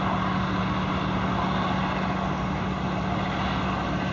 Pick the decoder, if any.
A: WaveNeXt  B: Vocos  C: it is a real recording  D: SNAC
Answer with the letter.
C